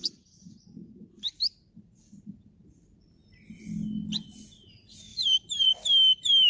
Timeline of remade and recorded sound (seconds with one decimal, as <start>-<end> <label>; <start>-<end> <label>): 0.0-2.5 remade; 2.5-5.1 recorded; 5.1-5.7 remade; 5.7-6.5 recorded

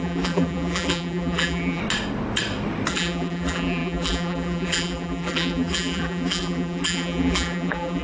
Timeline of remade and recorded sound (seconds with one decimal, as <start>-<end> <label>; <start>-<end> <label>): 0.0-1.8 remade; 1.8-2.9 recorded; 2.9-8.0 remade

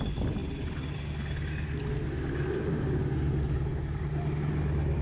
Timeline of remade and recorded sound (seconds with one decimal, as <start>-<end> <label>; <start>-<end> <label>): 0.0-5.0 recorded

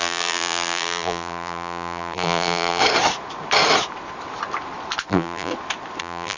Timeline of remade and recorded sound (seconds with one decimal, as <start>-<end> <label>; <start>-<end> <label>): 0.0-2.8 remade; 2.8-5.1 recorded; 5.1-5.5 remade; 5.5-6.0 recorded; 6.0-6.4 remade

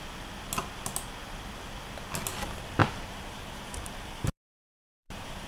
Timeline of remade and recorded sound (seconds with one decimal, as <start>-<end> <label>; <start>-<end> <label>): 0.0-2.8 recorded; 2.8-5.5 remade

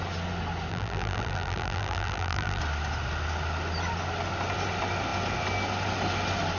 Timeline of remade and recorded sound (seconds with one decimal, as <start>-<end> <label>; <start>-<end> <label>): 0.0-0.7 recorded; 0.7-2.6 remade; 2.6-6.6 recorded